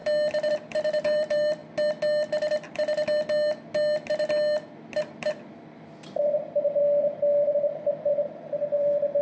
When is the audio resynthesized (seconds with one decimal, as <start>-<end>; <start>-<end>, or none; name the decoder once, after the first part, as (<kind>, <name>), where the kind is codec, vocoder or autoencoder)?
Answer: 0.5-1.6 (vocoder, BigVGAN v2); 6.2-6.8; 8.1-9.2